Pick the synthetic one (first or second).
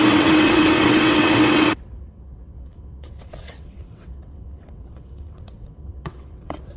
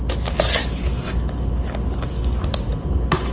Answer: first